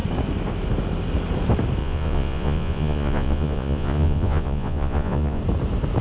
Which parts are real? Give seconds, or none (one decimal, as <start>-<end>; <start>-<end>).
0.0-1.8; 5.4-6.0

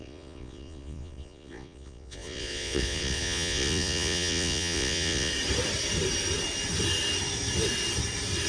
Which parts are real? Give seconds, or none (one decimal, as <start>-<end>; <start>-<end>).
5.3-8.5

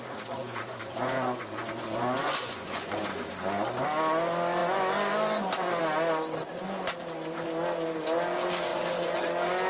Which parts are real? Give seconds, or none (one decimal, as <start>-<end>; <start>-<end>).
0.0-0.4; 3.0-8.7; 9.2-9.7

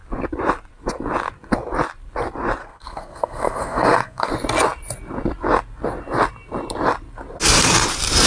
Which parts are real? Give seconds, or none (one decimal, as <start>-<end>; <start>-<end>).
0.0-2.6; 4.3-8.3